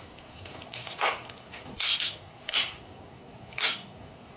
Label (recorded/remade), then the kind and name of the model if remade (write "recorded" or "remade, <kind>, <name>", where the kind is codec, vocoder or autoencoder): remade, codec, SNAC